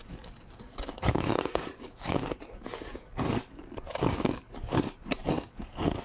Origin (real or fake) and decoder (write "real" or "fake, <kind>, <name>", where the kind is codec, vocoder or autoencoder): fake, codec, DAC